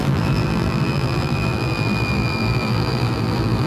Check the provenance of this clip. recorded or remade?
remade